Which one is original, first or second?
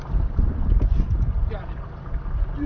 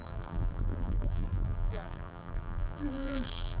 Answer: first